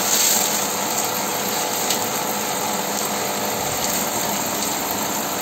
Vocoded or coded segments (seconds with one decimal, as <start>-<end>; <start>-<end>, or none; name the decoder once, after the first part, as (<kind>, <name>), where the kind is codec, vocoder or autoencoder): none